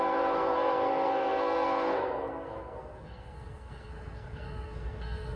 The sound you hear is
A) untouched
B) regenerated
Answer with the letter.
B